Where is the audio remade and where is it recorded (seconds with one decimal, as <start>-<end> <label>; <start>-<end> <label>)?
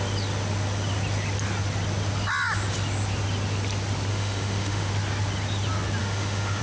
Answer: 0.0-4.1 recorded; 4.1-4.9 remade; 4.9-6.0 recorded; 6.0-6.6 remade